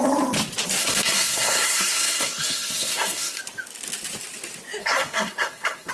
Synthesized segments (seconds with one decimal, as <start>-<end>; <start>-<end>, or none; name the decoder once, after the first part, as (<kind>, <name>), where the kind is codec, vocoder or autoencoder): 0.8-3.4 (codec, SNAC); 4.8-5.9